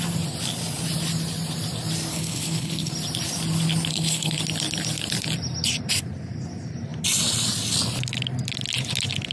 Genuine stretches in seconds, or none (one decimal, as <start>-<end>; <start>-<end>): 0.0-2.1; 2.9-3.9; 4.4-9.3